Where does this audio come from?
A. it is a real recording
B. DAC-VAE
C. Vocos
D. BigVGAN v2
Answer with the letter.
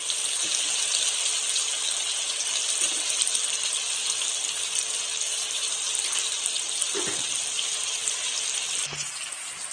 A